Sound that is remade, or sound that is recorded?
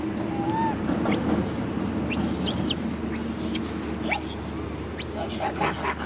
recorded